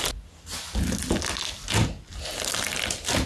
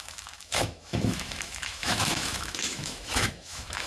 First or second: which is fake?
second